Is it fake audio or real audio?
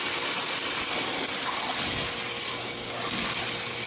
real